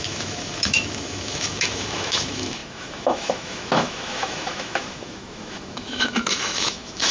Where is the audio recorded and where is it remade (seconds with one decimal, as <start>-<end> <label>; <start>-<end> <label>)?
0.0-7.1 remade